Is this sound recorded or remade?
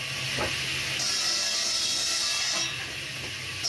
recorded